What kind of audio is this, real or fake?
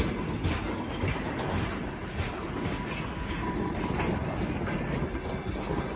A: real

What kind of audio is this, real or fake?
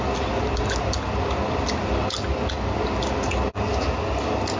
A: real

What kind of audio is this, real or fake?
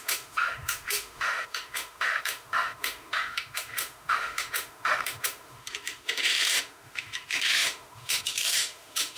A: fake